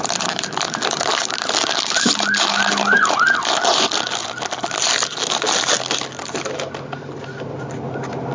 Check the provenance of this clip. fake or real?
real